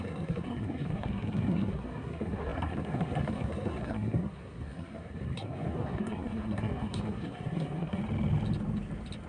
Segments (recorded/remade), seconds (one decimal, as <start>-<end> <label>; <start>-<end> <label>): 0.0-8.0 remade; 8.0-9.3 recorded